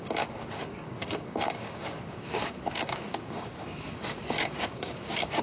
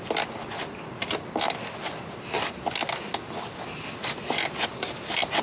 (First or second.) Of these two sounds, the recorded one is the second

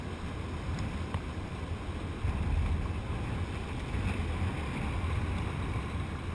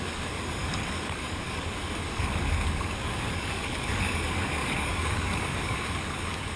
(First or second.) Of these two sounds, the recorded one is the first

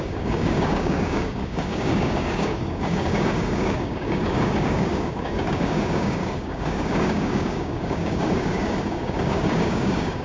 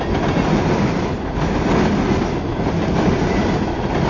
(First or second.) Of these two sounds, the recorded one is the second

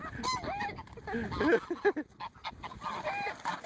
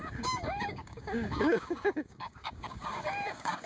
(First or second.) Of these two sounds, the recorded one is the first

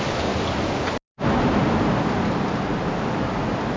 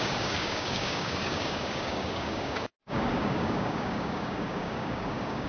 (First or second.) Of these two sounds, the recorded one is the first